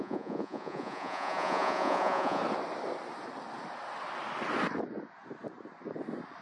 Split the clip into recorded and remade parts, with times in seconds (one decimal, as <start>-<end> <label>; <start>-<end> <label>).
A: 0.0-2.4 remade; 2.4-6.4 recorded

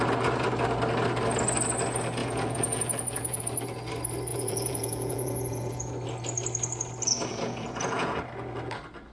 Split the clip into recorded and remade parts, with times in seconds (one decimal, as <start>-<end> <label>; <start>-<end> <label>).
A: 0.0-2.2 recorded; 2.2-3.4 remade; 3.4-4.3 recorded; 4.3-5.9 remade; 5.9-7.3 recorded; 7.3-8.2 remade; 8.2-9.1 recorded

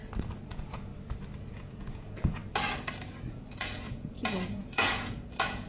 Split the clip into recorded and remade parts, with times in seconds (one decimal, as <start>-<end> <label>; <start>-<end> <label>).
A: 0.0-0.5 recorded; 0.5-0.9 remade; 0.9-1.5 recorded; 1.5-2.4 remade; 2.4-3.3 recorded; 3.3-5.7 remade